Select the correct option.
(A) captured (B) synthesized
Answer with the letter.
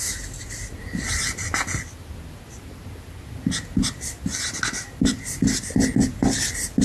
A